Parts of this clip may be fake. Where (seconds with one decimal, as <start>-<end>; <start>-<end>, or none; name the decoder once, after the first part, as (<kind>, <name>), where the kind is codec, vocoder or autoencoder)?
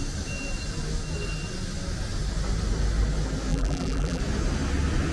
3.5-4.2 (vocoder, BigVGAN v2)